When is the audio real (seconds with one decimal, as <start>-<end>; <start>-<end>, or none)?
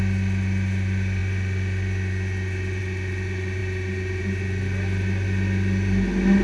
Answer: 0.0-6.4